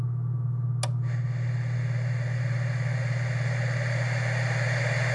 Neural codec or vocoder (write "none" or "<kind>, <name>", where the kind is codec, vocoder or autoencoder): none